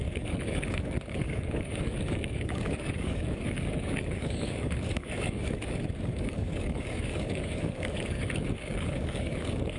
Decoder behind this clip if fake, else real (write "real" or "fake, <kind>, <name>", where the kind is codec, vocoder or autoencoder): fake, codec, DAC